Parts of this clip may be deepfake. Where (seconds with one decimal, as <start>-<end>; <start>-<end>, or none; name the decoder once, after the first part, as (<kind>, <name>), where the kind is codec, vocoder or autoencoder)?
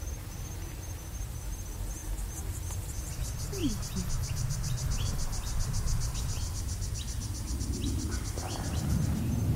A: none